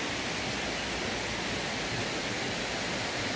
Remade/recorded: recorded